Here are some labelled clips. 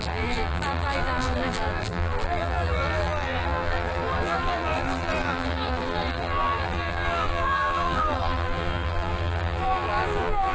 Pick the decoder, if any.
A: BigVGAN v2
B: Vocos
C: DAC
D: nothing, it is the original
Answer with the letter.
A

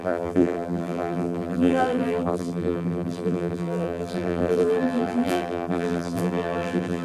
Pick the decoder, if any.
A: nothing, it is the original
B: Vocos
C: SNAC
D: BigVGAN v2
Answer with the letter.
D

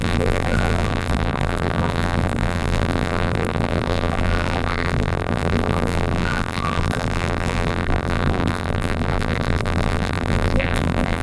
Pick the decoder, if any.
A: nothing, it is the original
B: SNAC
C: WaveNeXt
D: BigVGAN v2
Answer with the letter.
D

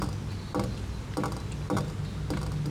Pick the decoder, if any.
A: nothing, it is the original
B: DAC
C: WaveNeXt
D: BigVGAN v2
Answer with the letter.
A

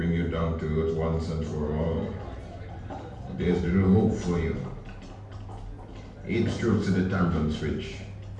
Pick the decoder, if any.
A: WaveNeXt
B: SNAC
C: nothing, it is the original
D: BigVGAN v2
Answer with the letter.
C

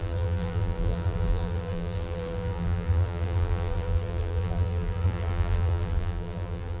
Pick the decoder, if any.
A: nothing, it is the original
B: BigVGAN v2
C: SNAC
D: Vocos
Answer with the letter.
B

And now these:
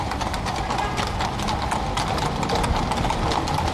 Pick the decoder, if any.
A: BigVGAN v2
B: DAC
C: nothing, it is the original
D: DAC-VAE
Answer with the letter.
C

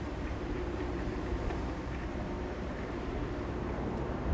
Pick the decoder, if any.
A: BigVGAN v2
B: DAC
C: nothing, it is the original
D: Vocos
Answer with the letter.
A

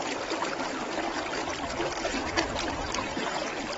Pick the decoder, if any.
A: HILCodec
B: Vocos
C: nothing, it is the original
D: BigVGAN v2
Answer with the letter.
C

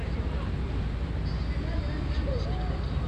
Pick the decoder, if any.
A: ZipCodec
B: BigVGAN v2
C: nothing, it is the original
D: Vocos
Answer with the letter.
C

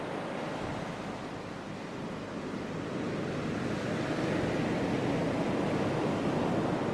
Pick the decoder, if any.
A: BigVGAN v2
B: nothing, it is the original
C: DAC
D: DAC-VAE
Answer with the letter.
B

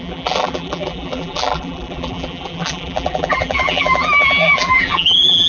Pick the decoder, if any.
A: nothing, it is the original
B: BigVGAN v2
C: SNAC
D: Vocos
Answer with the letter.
B